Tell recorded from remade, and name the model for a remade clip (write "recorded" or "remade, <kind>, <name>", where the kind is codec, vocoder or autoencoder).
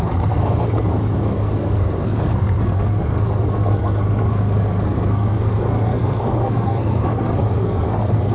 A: remade, codec, SNAC